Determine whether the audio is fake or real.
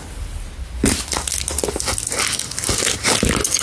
real